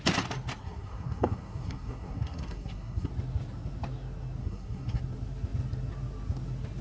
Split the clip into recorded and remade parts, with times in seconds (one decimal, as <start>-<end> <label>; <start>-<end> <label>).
0.0-0.6 recorded; 0.6-3.1 remade; 3.1-4.4 recorded; 4.4-5.0 remade; 5.0-6.8 recorded